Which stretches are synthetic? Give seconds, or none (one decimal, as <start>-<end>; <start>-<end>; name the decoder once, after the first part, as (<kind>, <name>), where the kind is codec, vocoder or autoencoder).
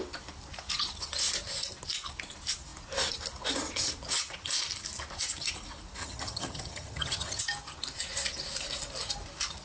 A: 6.0-7.4 (vocoder, HiFi-GAN)